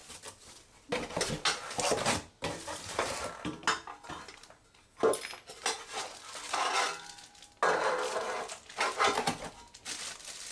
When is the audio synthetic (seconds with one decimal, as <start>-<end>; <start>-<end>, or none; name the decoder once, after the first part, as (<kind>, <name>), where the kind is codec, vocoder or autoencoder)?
none